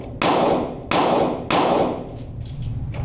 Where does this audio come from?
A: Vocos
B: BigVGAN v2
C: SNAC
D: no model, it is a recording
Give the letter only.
D